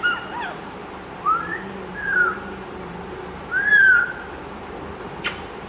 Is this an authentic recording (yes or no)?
yes